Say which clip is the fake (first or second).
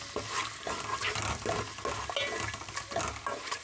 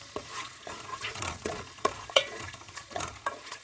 second